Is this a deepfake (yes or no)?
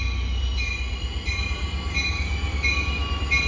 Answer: no